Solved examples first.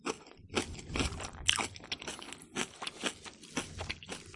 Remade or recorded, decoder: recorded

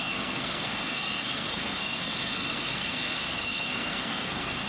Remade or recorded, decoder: remade, codec, SNAC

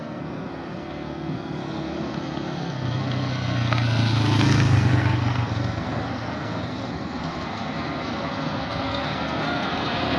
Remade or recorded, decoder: remade, codec, SNAC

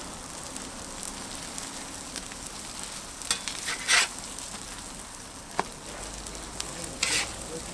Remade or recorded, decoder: recorded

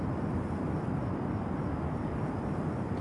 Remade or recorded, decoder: recorded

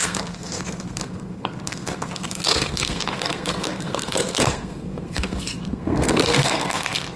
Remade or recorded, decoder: remade, codec, SNAC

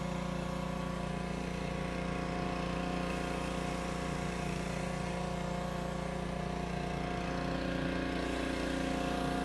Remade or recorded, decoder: recorded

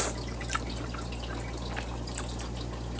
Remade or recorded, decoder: recorded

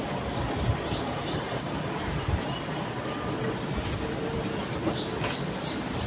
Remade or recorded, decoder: recorded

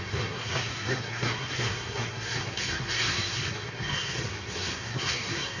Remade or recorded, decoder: remade, codec, SNAC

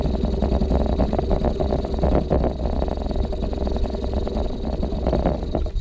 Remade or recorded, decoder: recorded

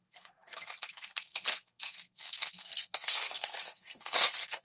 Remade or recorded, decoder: remade, codec, SNAC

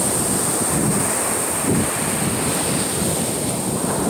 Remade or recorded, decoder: recorded